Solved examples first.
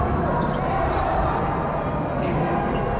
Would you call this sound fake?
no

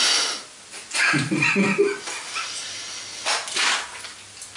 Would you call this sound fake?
no